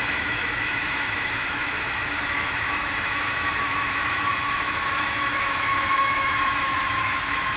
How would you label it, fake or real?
fake